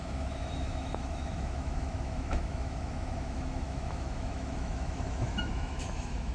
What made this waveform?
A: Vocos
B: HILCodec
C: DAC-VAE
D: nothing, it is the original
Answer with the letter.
C